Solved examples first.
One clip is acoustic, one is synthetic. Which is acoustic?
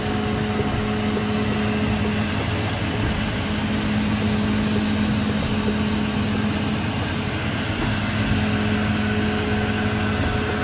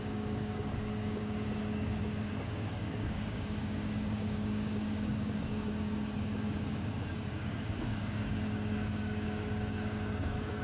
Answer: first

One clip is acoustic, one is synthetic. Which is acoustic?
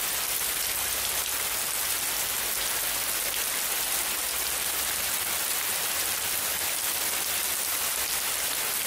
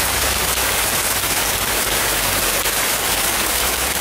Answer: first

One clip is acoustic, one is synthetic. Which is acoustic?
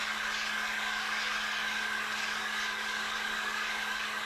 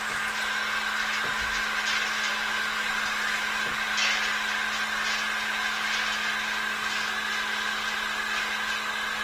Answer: second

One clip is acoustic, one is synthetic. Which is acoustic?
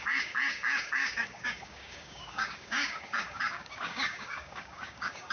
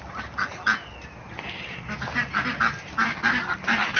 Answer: second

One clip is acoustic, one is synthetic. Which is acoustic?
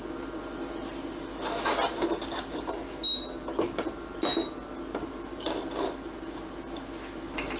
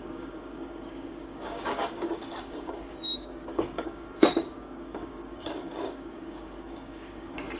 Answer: first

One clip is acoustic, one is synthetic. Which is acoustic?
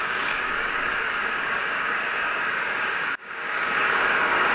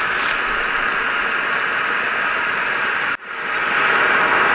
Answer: second